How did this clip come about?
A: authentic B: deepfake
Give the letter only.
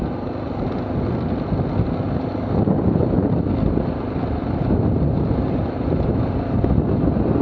A